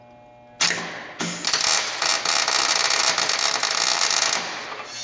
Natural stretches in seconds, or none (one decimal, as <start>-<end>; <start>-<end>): 0.0-5.0